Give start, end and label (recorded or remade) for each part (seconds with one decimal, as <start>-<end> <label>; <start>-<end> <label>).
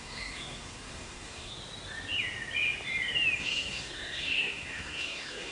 0.0-1.5 remade; 1.5-3.4 recorded; 3.4-5.5 remade